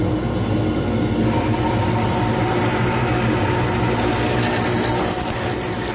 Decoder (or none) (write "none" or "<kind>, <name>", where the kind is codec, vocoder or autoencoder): none